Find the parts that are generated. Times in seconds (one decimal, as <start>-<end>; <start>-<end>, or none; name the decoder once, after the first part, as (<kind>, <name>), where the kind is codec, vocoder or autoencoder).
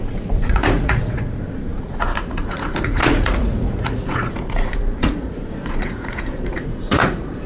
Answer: 0.0-7.5 (vocoder, Vocos)